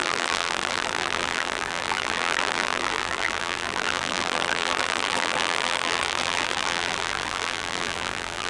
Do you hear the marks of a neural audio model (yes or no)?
yes